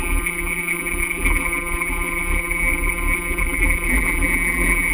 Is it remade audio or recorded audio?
remade